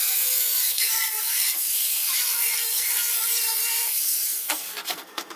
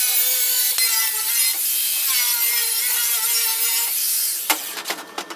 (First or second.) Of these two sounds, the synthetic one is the first